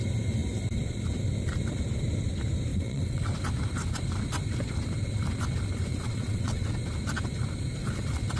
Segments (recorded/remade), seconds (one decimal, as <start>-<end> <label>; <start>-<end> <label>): 0.0-2.7 recorded; 2.7-3.2 remade; 3.2-5.9 recorded; 5.9-6.7 remade; 6.7-8.4 recorded

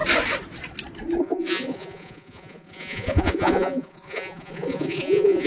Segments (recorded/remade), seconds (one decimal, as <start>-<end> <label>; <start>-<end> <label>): 0.0-1.2 recorded; 1.2-5.5 remade

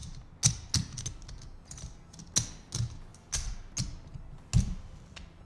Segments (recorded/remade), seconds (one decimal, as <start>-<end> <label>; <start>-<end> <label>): 0.0-5.5 recorded

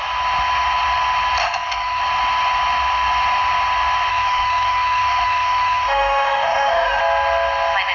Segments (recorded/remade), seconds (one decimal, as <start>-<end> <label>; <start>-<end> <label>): 0.0-1.4 recorded; 1.4-2.0 remade; 2.0-4.1 recorded; 4.1-7.0 remade; 7.0-7.9 recorded

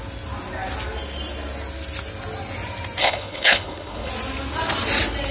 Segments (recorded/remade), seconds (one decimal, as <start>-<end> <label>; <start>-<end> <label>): 0.0-3.0 recorded; 3.0-4.1 remade; 4.1-5.3 recorded

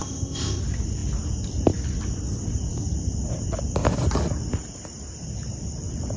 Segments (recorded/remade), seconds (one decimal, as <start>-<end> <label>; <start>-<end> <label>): 0.0-0.6 remade; 0.6-6.2 recorded

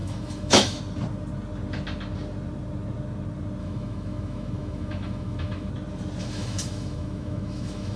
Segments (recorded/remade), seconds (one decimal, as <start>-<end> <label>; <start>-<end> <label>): 0.0-0.8 remade; 0.8-3.6 recorded; 3.6-5.7 remade; 5.7-6.2 recorded; 6.2-8.0 remade

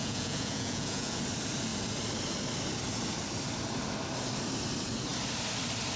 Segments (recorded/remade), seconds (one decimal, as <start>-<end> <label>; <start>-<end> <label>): 0.0-1.2 remade; 1.2-6.0 recorded